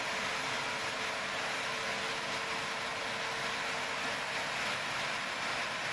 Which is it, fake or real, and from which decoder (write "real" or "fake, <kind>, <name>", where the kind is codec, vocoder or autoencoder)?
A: real